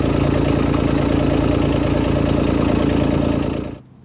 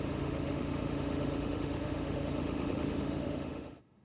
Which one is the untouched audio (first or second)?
first